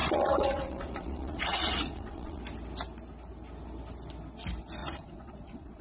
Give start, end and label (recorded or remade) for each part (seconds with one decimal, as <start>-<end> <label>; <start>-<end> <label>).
0.0-2.4 remade; 2.4-4.8 recorded; 4.8-5.8 remade